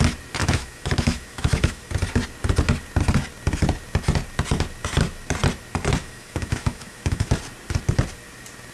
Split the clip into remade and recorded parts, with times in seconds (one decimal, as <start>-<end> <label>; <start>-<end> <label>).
0.0-0.4 recorded; 0.4-1.9 remade; 1.9-6.0 recorded; 6.0-7.3 remade; 7.3-8.7 recorded